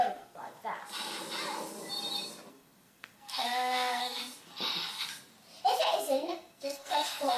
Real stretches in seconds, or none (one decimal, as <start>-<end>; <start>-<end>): 0.6-2.5; 4.2-5.8